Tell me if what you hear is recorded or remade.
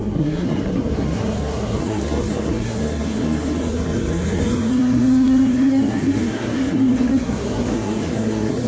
remade